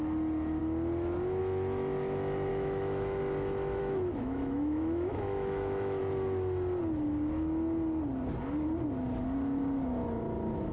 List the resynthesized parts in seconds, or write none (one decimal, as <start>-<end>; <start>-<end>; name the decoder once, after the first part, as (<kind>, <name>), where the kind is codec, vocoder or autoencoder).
2.5-3.2 (autoencoder, DAC-VAE); 3.8-6.0

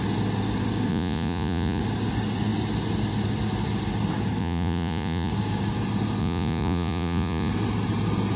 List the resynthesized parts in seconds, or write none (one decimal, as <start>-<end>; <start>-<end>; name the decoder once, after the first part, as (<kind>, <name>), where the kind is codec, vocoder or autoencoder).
0.9-1.8 (vocoder, Vocos); 4.4-5.3; 6.2-7.5

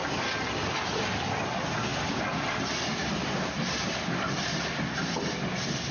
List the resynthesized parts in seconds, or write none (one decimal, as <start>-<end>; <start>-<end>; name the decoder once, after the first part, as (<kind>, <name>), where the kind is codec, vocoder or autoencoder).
none

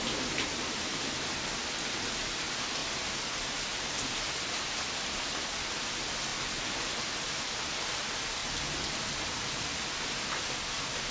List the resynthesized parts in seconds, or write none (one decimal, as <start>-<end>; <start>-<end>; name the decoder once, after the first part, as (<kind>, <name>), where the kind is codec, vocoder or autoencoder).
2.8-4.8 (vocoder, BigVGAN v2); 6.3-7.7

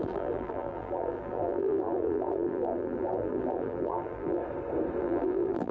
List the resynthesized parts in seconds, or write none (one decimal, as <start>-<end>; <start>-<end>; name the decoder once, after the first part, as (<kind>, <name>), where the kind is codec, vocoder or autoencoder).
0.0-4.4 (vocoder, BigVGAN v2); 5.0-5.7

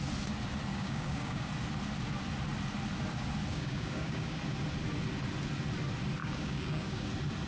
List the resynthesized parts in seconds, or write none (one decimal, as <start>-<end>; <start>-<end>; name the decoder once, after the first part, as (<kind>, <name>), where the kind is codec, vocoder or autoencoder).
0.7-1.5 (codec, DAC); 3.5-4.4; 6.2-7.1

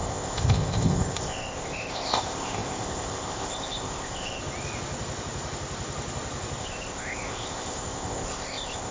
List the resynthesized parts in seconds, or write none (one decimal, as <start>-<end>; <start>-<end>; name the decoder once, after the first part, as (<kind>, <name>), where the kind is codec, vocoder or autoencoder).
0.0-4.4 (codec, ZipCodec); 6.6-8.9

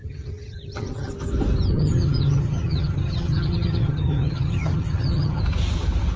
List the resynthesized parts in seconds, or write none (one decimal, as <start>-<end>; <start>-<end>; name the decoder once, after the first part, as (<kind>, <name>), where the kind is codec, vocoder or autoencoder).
0.0-1.1 (vocoder, HiFi-GAN); 1.7-5.4